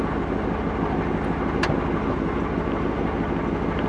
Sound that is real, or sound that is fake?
real